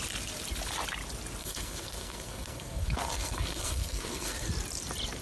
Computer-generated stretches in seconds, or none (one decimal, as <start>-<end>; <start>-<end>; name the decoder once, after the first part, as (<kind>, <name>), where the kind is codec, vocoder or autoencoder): 1.4-4.5 (codec, SNAC)